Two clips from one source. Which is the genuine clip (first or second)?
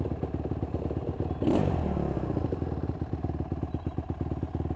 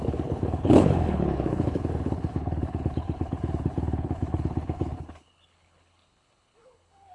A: first